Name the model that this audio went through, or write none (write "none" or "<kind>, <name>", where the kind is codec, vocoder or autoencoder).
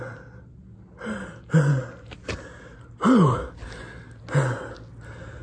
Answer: none